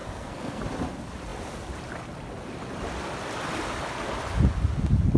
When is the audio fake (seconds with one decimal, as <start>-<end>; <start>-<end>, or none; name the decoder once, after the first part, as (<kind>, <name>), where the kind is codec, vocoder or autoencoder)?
0.0-0.6 (codec, SNAC)